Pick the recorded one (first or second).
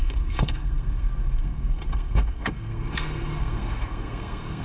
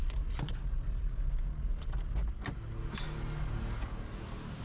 second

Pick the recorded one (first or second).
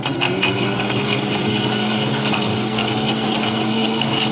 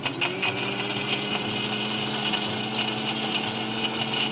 second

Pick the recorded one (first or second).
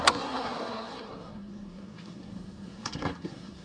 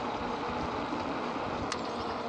second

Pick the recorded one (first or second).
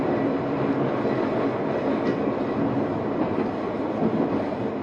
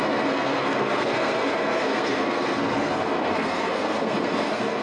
first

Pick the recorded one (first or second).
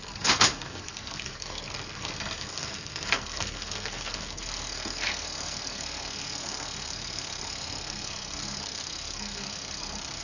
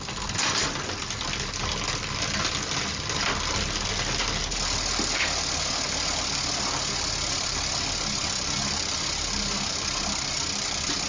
second